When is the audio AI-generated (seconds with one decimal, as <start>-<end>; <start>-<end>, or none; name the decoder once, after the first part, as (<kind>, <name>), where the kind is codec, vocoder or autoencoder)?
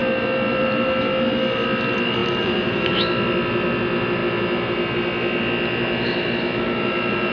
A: 2.2-2.9 (vocoder, BigVGAN v2)